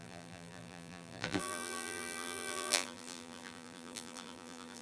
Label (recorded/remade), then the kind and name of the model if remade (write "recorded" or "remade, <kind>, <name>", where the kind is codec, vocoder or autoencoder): remade, vocoder, BigVGAN v2